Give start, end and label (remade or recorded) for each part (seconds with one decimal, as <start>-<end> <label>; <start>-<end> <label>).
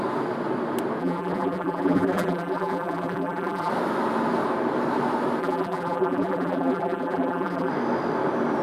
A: 0.0-1.0 recorded; 1.0-3.7 remade; 3.7-5.4 recorded; 5.4-7.7 remade; 7.7-8.6 recorded